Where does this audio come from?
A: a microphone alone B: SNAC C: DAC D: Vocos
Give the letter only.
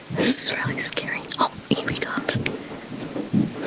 A